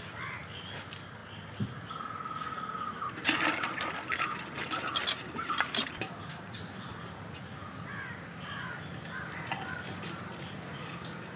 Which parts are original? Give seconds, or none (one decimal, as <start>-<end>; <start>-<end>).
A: 0.0-11.4